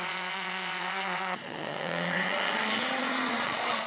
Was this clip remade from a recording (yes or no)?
yes